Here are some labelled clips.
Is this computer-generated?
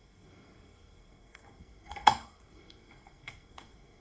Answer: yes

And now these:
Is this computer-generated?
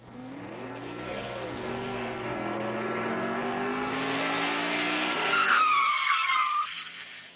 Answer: yes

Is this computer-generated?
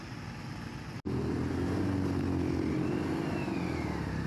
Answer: no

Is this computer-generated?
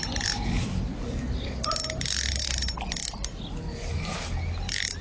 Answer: no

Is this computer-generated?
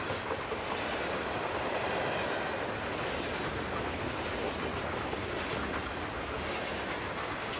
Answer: no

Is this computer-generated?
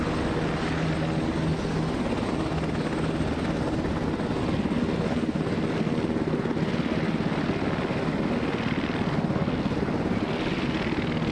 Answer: no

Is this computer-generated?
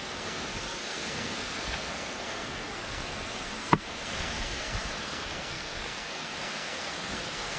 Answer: yes